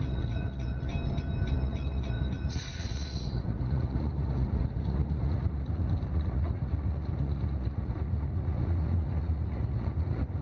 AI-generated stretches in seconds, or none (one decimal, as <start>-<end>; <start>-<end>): 0.0-0.9; 1.5-10.4